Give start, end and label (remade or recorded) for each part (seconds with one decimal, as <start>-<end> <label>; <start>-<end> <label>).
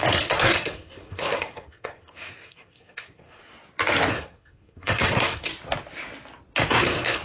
0.0-3.4 remade; 3.4-4.1 recorded; 4.1-5.5 remade; 5.5-6.7 recorded; 6.7-7.2 remade